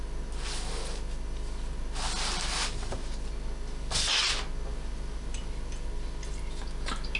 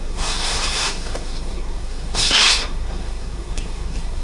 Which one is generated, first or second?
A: second